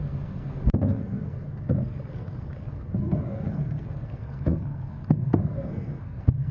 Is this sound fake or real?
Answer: fake